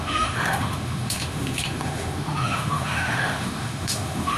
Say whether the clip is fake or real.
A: fake